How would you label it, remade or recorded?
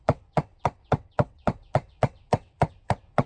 remade